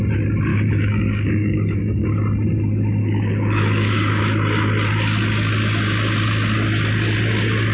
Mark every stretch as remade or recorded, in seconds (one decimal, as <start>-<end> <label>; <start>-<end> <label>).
0.0-0.5 recorded; 0.5-2.1 remade; 2.1-3.0 recorded; 3.0-4.2 remade; 4.2-7.7 recorded

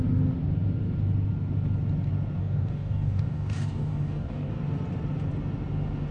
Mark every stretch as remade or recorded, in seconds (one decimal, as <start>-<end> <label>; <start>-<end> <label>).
0.0-2.4 recorded; 2.4-4.5 remade; 4.5-6.1 recorded

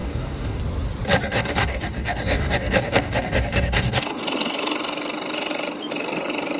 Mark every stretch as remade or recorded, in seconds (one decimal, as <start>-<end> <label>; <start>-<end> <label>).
0.0-0.6 remade; 0.6-1.3 recorded; 1.3-4.2 remade; 4.2-6.6 recorded

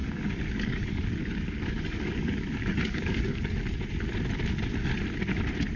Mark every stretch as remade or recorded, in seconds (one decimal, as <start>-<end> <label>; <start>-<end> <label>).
0.0-3.5 remade; 3.5-5.8 recorded

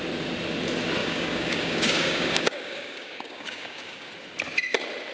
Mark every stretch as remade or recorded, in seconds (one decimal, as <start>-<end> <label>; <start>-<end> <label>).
0.0-1.0 recorded; 1.0-4.1 remade; 4.1-5.1 recorded